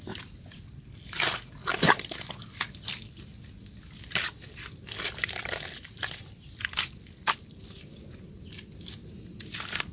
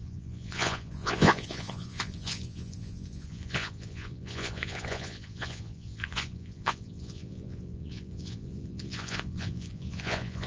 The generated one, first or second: second